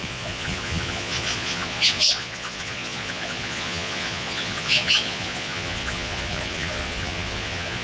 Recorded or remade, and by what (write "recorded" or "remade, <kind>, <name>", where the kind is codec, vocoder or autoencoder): remade, vocoder, Vocos